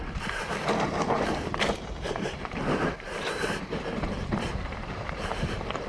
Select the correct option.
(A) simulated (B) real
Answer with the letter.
A